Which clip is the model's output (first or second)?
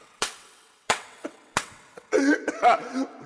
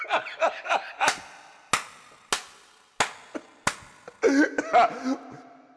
first